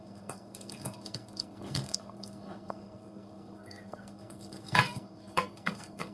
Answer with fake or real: fake